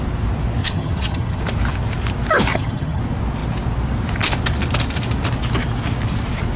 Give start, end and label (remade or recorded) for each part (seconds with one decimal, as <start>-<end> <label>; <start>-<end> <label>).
0.0-0.6 recorded; 0.6-1.4 remade; 1.4-2.5 recorded; 2.5-3.0 remade; 3.0-6.6 recorded

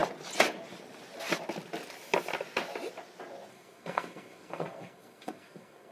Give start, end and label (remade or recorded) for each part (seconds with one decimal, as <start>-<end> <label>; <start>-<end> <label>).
0.0-3.5 recorded; 3.5-5.9 remade

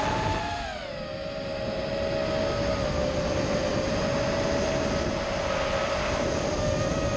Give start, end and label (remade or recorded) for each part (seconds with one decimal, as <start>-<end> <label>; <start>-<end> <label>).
0.0-7.2 recorded

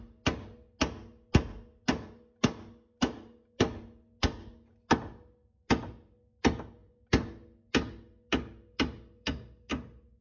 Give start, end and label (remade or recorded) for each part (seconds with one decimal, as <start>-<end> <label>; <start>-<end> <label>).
0.0-10.2 recorded

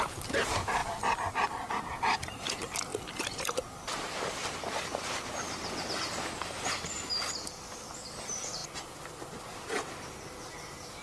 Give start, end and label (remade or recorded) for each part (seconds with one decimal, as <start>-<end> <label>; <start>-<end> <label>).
0.0-0.8 remade; 0.8-2.2 recorded; 2.2-2.9 remade; 2.9-8.1 recorded; 8.1-8.6 remade; 8.6-10.5 recorded; 10.5-11.0 remade